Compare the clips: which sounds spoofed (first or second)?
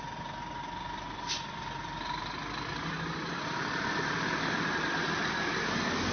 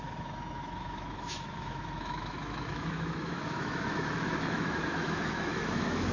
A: second